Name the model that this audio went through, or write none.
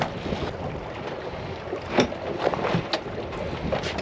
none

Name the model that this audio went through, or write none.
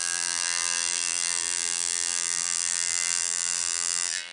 vocoder, BigVGAN v2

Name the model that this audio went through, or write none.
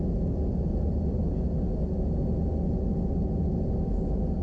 none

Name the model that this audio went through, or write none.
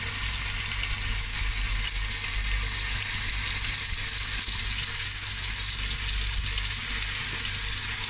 none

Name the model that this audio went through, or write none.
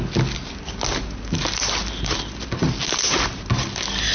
none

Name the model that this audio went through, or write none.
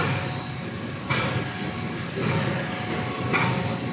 none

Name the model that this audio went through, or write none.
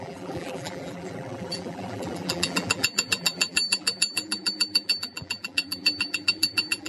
vocoder, BigVGAN v2